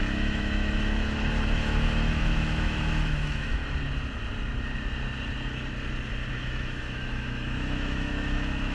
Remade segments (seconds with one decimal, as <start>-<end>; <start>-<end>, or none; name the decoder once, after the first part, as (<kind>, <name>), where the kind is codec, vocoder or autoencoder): 0.0-3.6 (autoencoder, DAC-VAE); 6.3-8.7